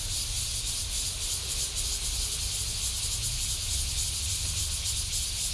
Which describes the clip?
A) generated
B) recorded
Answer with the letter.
B